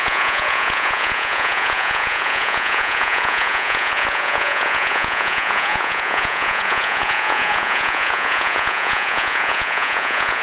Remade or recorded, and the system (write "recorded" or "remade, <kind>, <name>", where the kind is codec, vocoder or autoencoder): remade, vocoder, Vocos